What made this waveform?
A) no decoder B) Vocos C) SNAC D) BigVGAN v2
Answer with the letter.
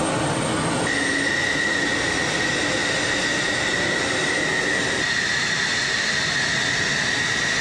A